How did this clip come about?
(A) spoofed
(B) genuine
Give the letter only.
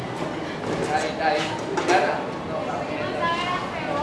B